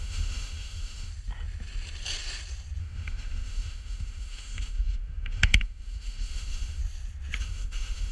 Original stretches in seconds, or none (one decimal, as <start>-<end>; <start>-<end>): 1.1-2.8; 6.8-7.4